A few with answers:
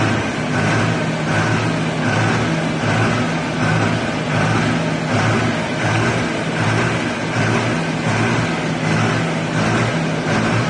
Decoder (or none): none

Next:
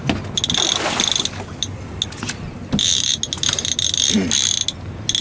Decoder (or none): none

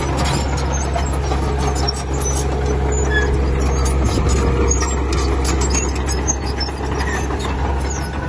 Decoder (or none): none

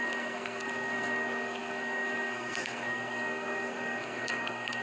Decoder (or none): codec, SNAC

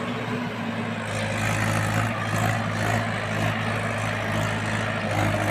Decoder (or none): none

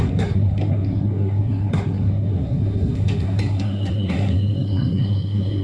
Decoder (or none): codec, SNAC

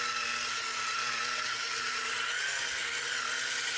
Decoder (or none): none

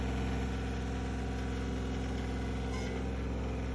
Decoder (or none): none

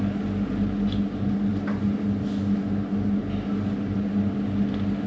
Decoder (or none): none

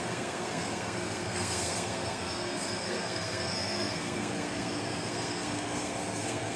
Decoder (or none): codec, SNAC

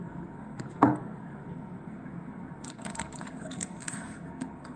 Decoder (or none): codec, SNAC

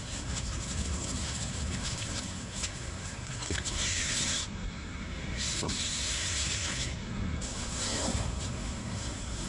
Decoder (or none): codec, SNAC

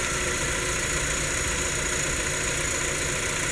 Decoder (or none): none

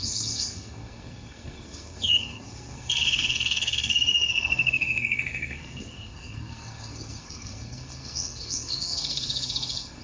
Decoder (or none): codec, SNAC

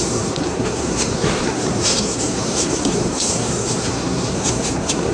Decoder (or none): codec, SNAC